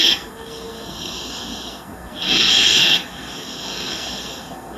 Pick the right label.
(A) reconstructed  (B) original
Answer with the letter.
A